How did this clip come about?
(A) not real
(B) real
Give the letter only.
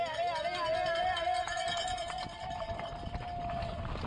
B